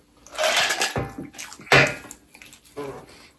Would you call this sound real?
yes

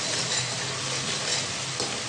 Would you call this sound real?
yes